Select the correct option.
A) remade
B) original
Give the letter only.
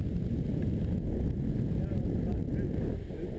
B